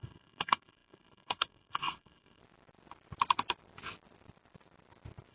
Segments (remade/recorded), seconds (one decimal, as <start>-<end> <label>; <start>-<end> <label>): 0.0-2.4 remade; 2.4-5.3 recorded